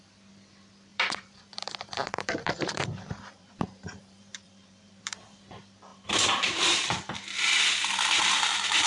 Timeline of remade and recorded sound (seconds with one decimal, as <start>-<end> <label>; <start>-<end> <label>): 0.0-0.9 recorded; 0.9-5.4 remade; 5.4-5.9 recorded; 5.9-7.1 remade; 7.1-8.9 recorded